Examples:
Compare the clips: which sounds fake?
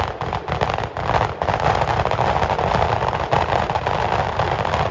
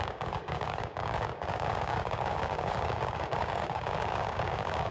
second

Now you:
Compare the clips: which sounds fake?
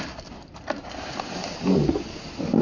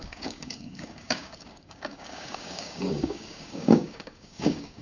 second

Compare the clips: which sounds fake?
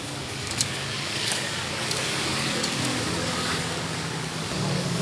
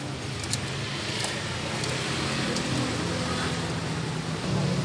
first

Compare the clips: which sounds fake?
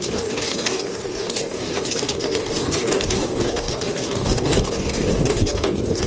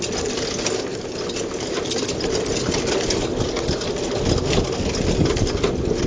first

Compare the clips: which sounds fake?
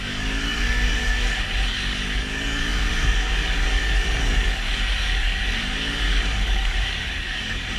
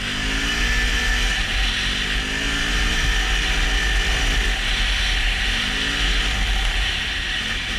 first